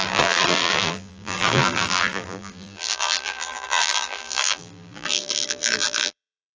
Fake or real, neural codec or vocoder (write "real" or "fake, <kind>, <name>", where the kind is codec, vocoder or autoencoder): fake, vocoder, BigVGAN v2